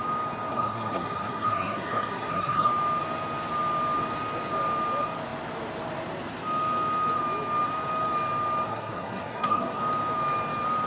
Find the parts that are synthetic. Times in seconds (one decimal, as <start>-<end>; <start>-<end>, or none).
0.5-2.7; 8.7-9.8